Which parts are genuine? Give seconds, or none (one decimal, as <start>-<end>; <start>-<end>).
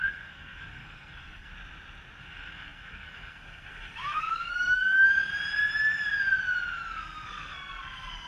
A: 1.5-2.2; 5.3-6.9